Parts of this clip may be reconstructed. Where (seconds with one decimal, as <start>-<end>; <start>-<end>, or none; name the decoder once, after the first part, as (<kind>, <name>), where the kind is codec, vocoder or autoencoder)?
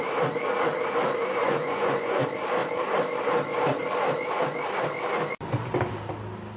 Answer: 1.4-2.2 (vocoder, Vocos)